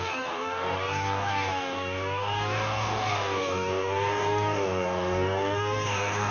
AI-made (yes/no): yes